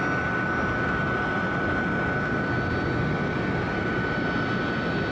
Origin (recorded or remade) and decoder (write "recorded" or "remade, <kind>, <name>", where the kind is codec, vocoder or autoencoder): recorded